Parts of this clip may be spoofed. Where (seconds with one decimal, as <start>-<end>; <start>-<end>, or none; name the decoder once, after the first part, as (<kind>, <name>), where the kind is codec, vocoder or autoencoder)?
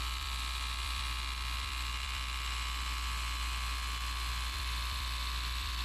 0.0-5.8 (vocoder, BigVGAN v2)